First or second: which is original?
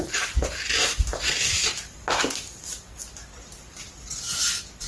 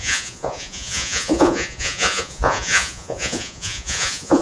first